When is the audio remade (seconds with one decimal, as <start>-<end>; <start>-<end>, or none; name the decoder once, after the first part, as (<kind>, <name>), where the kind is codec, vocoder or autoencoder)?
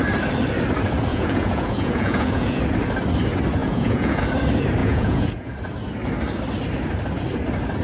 1.1-2.6 (vocoder, Vocos); 3.6-4.2; 4.8-5.5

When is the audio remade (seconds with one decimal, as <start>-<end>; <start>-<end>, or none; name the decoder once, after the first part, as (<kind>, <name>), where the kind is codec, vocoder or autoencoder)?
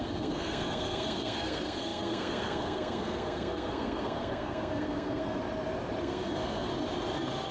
0.0-5.4 (codec, SNAC); 6.0-6.7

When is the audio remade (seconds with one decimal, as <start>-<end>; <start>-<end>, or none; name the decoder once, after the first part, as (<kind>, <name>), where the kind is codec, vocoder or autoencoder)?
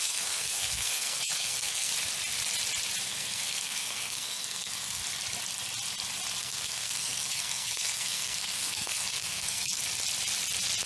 0.0-1.9 (codec, SNAC); 3.0-5.0; 6.4-9.8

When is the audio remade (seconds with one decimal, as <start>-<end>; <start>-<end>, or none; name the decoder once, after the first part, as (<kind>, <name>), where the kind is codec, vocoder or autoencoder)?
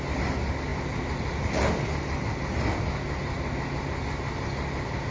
none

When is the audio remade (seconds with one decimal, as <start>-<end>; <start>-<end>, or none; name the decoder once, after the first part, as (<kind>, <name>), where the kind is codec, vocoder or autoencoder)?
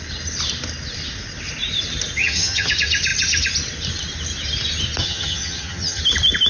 2.2-2.7 (vocoder, HiFi-GAN); 5.0-6.0